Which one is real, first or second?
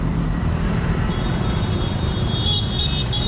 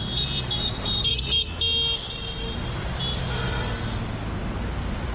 second